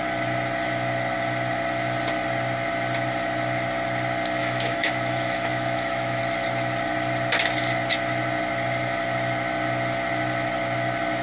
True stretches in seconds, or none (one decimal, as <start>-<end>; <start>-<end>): 0.0-4.4; 6.2-11.2